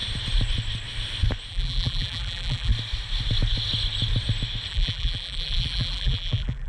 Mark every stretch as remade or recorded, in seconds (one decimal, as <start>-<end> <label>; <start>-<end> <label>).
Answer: 0.0-1.5 recorded; 1.5-2.7 remade; 2.7-4.7 recorded; 4.7-6.7 remade